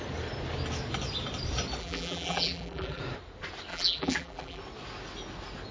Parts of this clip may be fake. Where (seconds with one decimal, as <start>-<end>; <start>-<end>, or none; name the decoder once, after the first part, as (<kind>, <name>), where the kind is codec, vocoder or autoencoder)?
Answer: 1.8-3.0 (vocoder, BigVGAN v2); 3.7-4.6